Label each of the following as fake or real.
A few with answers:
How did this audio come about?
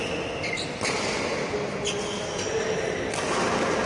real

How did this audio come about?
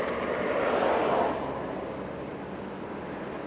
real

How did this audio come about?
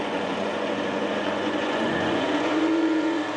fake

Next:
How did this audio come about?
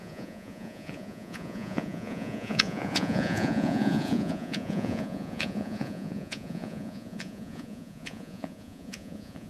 fake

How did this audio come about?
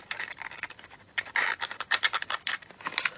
fake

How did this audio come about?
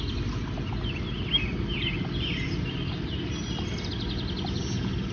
real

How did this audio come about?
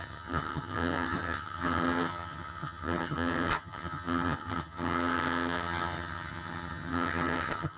fake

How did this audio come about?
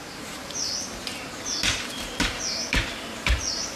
fake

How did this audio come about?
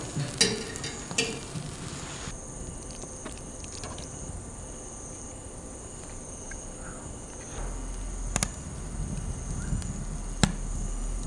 real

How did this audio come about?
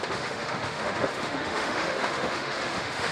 fake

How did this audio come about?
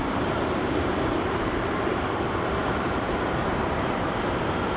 fake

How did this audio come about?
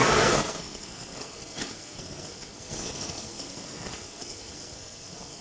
fake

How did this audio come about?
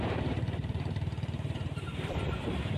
fake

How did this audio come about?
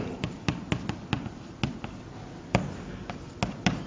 real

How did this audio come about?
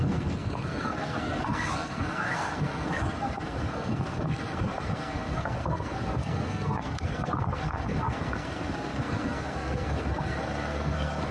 fake